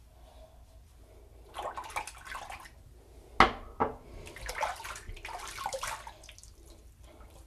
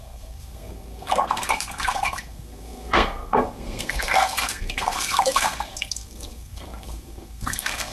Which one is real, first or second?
first